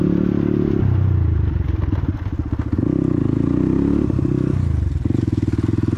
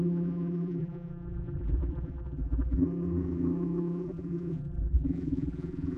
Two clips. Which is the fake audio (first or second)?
second